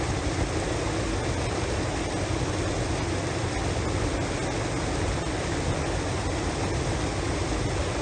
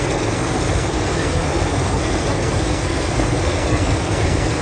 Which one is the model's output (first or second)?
second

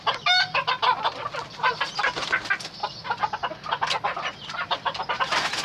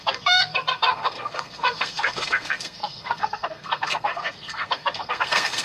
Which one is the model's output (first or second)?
second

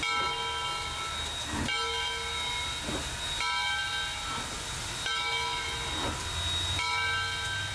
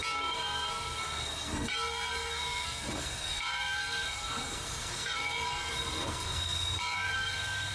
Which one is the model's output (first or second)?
second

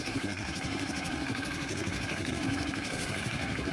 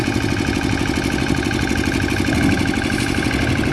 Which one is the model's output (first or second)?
first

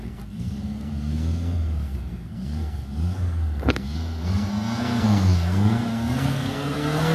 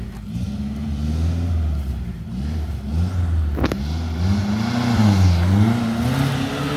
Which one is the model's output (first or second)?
first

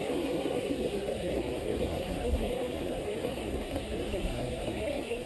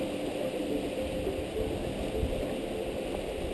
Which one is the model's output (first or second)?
first